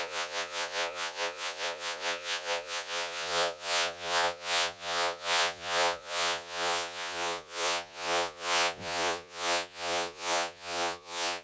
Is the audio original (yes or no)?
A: no